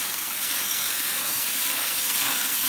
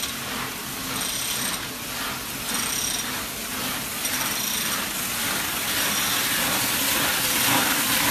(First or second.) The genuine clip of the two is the second